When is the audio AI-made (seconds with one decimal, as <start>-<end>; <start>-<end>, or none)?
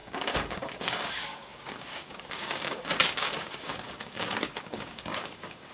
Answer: 0.0-5.7